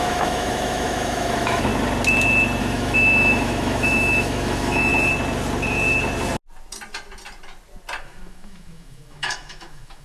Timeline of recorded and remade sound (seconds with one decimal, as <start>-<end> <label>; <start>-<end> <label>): 0.0-1.7 remade; 1.7-2.6 recorded; 2.6-4.9 remade; 4.9-8.0 recorded; 8.0-10.0 remade